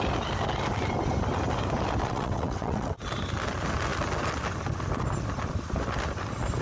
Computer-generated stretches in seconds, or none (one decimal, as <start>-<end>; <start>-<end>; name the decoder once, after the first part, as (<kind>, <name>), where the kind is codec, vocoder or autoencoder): 2.0-2.9 (vocoder, WaveNeXt)